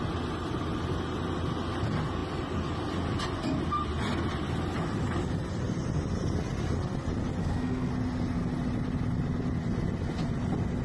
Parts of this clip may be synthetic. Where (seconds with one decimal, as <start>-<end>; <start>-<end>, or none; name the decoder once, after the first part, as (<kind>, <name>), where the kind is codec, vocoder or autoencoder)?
7.4-7.9 (codec, SNAC)